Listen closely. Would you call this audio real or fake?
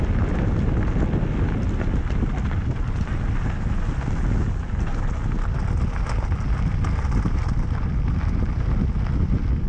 real